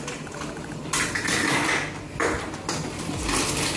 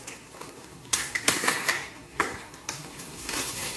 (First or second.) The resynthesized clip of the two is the second